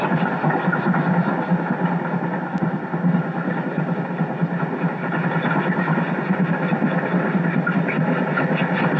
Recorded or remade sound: recorded